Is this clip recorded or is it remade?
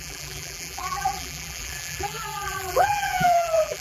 remade